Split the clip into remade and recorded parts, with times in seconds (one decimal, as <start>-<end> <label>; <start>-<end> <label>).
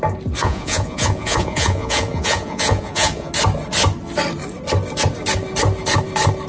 0.0-0.4 recorded; 0.4-3.3 remade; 3.3-6.5 recorded